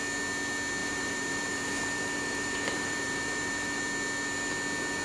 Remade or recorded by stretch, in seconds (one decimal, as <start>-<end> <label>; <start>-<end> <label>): 0.0-0.8 recorded; 0.8-3.8 remade; 3.8-5.0 recorded